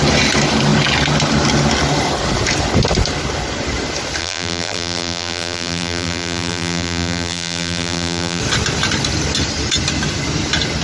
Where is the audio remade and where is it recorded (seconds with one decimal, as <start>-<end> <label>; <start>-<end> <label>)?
0.0-4.2 recorded; 4.2-8.4 remade; 8.4-10.8 recorded